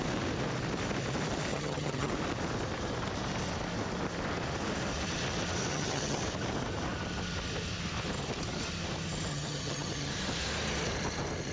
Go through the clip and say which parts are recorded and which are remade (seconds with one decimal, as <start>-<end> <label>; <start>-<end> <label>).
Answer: 0.0-1.5 recorded; 1.5-2.1 remade; 2.1-5.7 recorded; 5.7-6.2 remade; 6.2-9.3 recorded; 9.3-10.1 remade; 10.1-11.5 recorded

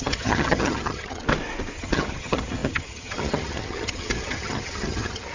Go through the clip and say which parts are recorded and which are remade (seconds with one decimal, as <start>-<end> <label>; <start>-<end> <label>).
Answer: 0.0-1.2 remade; 1.2-1.8 recorded; 1.8-5.3 remade